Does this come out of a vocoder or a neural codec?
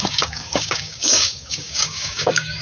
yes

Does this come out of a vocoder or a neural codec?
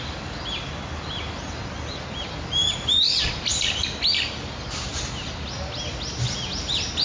no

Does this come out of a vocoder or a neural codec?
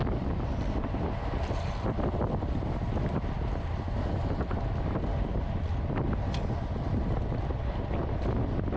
no